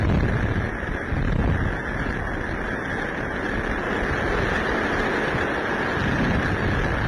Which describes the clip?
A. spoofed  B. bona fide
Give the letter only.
B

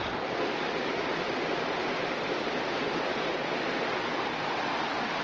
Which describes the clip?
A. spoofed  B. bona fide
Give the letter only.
B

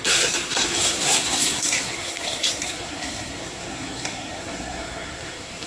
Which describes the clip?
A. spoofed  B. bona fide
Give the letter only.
A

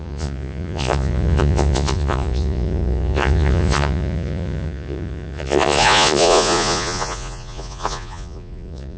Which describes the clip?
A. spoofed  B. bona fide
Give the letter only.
A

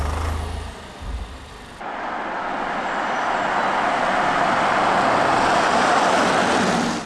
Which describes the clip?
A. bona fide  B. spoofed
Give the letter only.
A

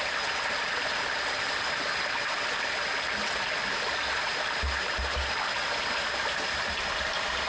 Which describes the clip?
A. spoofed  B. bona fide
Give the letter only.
B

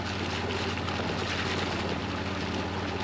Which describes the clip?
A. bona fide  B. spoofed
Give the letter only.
A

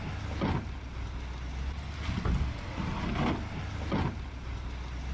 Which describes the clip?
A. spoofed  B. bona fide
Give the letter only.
B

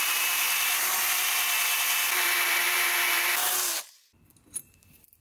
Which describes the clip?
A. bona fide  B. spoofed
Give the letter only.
B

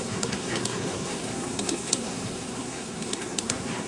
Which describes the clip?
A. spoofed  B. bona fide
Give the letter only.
A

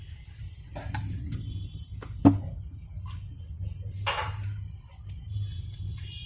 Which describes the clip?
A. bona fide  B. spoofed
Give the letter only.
A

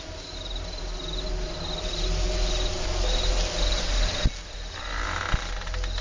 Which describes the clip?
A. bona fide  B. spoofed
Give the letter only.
A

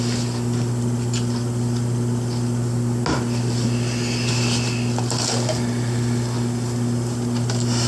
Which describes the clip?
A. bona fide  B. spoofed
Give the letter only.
A